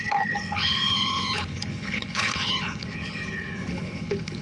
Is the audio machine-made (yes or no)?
yes